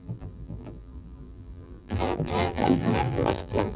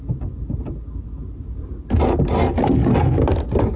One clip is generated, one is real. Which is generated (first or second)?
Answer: first